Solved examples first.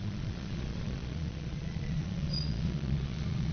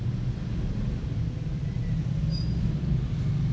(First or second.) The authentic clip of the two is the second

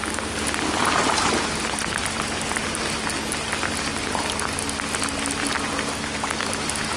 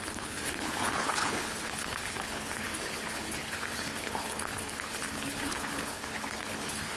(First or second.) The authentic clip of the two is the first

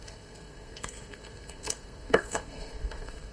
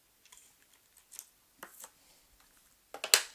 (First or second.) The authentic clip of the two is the second